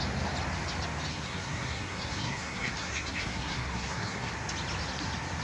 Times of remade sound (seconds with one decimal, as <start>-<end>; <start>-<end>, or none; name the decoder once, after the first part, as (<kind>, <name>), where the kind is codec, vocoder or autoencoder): 1.1-4.3 (codec, SNAC)